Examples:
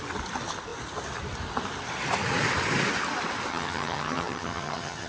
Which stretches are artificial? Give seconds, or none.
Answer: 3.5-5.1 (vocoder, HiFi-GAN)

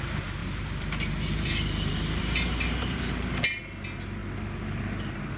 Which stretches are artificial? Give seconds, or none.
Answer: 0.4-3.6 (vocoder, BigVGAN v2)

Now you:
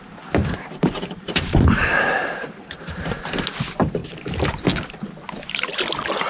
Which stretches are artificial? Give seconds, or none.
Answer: 0.4-3.2 (vocoder, BigVGAN v2); 4.0-4.5